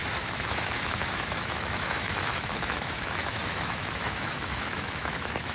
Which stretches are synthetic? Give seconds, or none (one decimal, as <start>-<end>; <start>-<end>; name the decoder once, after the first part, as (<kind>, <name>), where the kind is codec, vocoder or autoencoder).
0.0-5.5 (autoencoder, DAC-VAE)